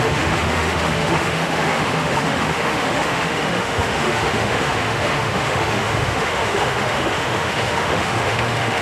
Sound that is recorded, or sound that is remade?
remade